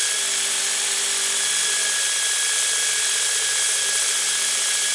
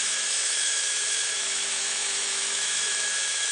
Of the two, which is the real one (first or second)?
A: first